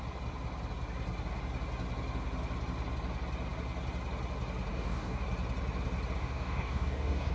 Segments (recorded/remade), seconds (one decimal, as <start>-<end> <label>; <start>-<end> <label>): 0.0-4.7 recorded; 4.7-5.2 remade; 5.2-6.2 recorded; 6.2-7.3 remade